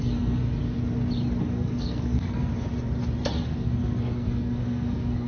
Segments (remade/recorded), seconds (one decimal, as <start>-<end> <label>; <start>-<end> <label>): 0.0-0.4 remade; 0.4-1.4 recorded; 1.4-2.5 remade; 2.5-3.2 recorded; 3.2-5.3 remade

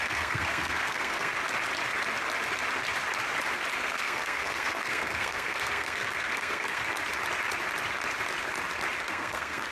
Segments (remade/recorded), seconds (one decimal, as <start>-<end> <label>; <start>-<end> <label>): 0.0-1.3 remade; 1.3-3.8 recorded; 3.8-6.8 remade; 6.8-9.1 recorded; 9.1-9.7 remade

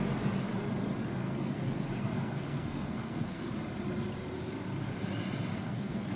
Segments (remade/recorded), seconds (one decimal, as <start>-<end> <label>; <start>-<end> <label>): 0.0-1.2 recorded; 1.2-3.5 remade; 3.5-5.5 recorded; 5.5-6.2 remade

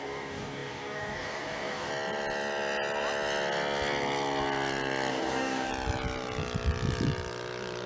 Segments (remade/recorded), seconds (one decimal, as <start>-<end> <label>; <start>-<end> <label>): 0.0-1.9 remade; 1.9-5.1 recorded; 5.1-5.7 remade; 5.7-7.9 recorded

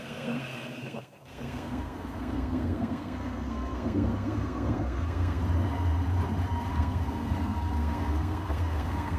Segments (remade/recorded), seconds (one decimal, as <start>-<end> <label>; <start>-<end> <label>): 0.0-5.4 remade; 5.4-6.7 recorded; 6.7-9.2 remade